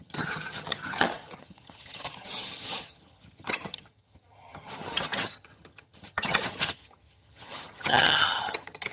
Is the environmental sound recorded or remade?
remade